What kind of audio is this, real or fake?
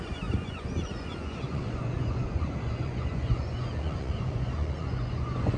fake